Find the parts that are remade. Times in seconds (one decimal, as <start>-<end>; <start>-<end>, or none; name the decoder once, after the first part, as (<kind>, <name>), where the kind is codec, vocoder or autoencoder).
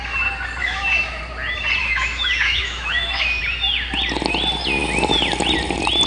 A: 0.6-1.2 (autoencoder, DAC-VAE); 1.8-3.4